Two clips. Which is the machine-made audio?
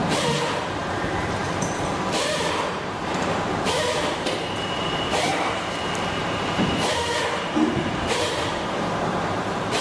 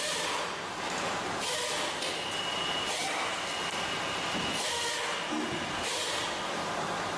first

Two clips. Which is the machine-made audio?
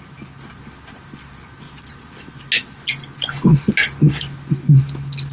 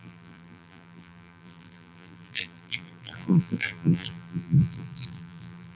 second